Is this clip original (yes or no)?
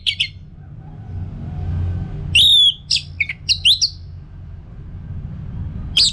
yes